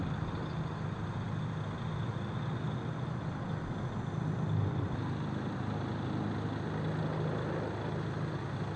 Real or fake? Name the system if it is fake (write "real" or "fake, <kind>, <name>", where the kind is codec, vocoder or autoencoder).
real